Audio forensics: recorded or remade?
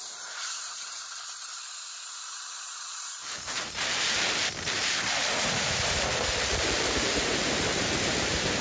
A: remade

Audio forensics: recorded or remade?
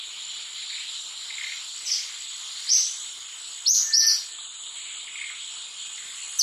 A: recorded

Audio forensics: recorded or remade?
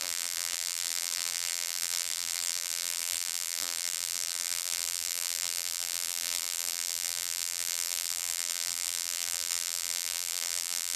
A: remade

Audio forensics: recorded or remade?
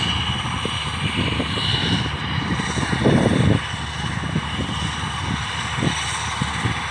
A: recorded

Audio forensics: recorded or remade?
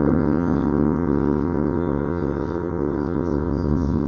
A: remade